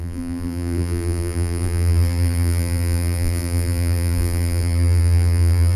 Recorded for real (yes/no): no